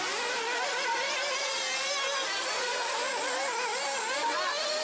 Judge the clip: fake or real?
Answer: real